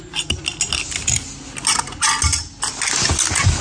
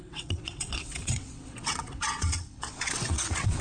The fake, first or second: second